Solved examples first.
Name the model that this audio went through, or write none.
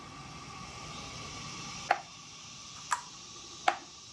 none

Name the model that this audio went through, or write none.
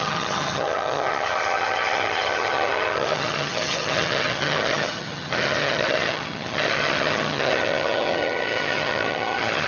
vocoder, HiFi-GAN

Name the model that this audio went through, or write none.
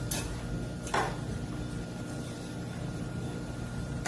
none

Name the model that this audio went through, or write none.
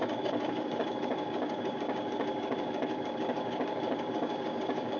codec, DAC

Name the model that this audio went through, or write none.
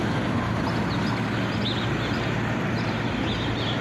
none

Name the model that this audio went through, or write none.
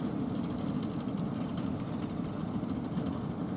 none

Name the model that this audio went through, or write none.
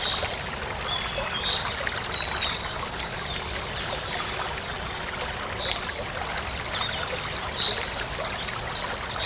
none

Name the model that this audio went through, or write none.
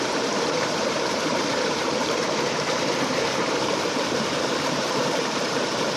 vocoder, BigVGAN v2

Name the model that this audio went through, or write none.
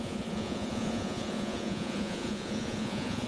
vocoder, Vocos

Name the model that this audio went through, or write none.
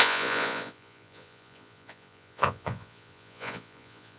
vocoder, Vocos